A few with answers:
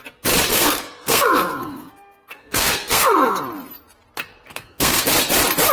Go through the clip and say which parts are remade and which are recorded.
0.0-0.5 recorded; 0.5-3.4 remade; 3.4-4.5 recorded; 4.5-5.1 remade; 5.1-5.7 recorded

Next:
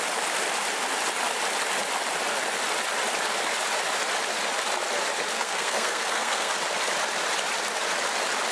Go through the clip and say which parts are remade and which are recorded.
0.0-5.3 recorded; 5.3-6.5 remade; 6.5-8.5 recorded

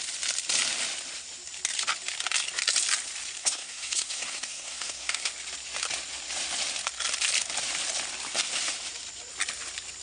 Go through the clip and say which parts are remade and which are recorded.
0.0-3.4 recorded; 3.4-5.3 remade; 5.3-10.0 recorded